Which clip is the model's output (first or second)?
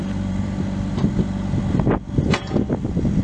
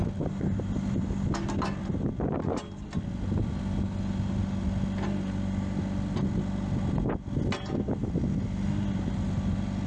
first